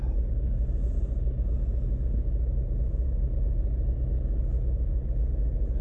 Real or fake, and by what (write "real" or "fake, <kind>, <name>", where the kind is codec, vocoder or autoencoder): real